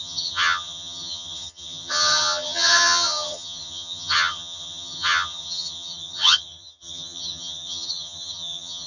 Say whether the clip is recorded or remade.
remade